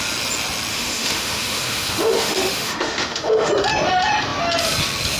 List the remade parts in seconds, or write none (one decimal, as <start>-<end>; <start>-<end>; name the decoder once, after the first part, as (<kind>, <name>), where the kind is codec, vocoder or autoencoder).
0.7-3.5 (autoencoder, DAC-VAE)